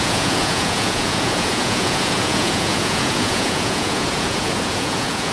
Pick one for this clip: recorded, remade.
remade